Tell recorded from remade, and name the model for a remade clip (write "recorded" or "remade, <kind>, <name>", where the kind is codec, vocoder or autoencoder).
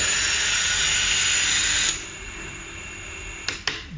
recorded